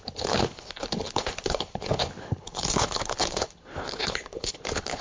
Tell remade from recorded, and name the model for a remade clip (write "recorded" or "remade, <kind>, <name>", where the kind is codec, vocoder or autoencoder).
remade, codec, HILCodec